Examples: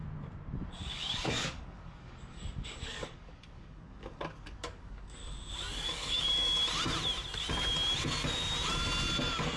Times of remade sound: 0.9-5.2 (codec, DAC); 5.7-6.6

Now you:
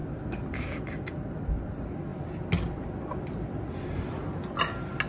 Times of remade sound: none

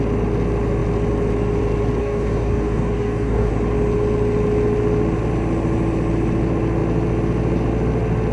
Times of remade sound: 2.0-3.5 (codec, DAC)

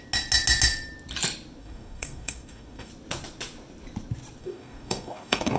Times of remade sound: 1.6-2.9 (codec, DAC); 4.4-5.6

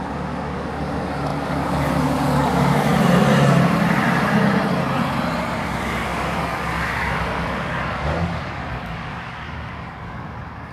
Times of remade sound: 0.0-2.9 (codec, DAC); 5.6-10.7

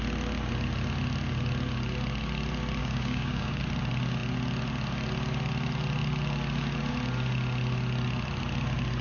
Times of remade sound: 2.8-3.6 (codec, DAC)

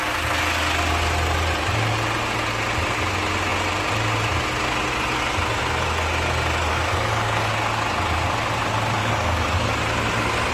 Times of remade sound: 6.7-7.5 (codec, DAC); 9.0-9.7

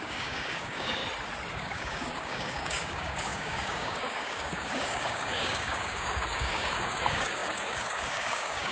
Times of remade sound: 0.0-1.0 (codec, DAC); 1.5-8.7